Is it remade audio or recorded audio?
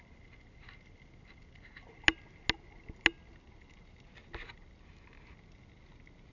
recorded